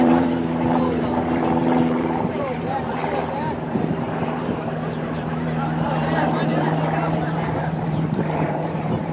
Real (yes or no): no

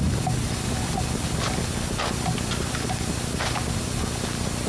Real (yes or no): yes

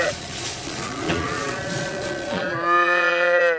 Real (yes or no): no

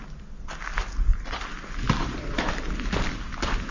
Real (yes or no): yes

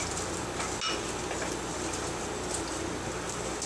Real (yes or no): yes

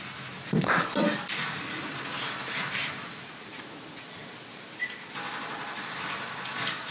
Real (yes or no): yes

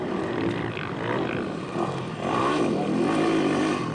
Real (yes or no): yes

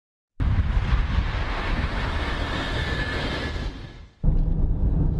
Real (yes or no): yes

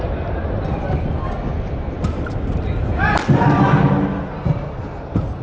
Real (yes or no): yes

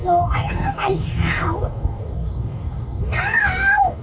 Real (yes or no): no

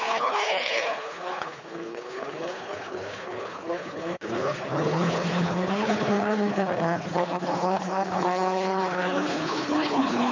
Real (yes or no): no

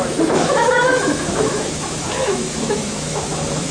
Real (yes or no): no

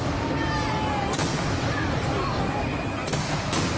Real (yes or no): yes